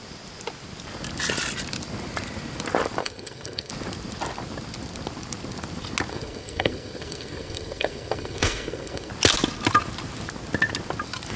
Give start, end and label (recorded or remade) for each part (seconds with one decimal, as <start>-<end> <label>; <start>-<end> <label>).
0.0-3.0 recorded; 3.0-3.7 remade; 3.7-6.1 recorded; 6.1-9.1 remade; 9.1-11.4 recorded